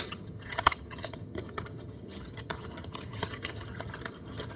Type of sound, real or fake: fake